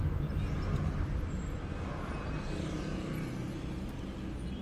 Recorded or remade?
recorded